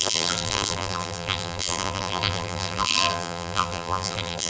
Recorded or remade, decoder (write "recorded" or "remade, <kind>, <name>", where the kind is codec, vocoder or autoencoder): remade, vocoder, BigVGAN v2